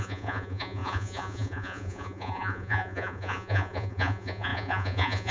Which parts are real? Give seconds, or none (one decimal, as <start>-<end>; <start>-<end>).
none